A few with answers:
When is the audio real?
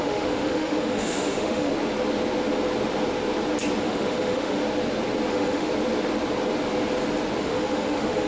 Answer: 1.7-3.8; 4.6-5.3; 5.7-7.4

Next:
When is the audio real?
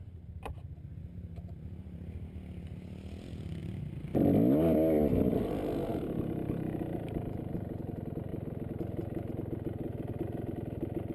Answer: 0.0-11.1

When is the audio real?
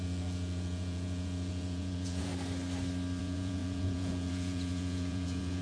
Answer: 2.3-3.2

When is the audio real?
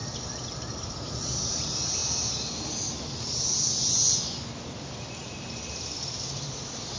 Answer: 2.0-6.2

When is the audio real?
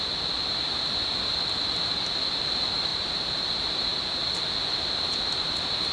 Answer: none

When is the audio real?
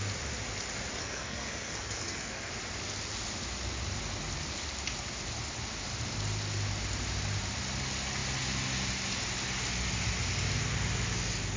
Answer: 0.0-1.0; 2.5-11.6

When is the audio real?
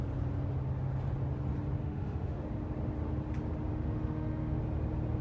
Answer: 0.0-1.8; 2.4-3.7; 4.6-5.2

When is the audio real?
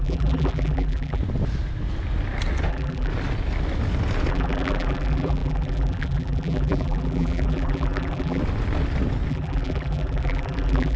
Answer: 1.2-2.7; 3.1-4.3; 8.4-9.3